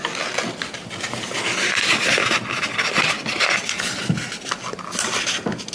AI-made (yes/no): no